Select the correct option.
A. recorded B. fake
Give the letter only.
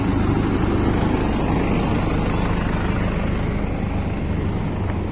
A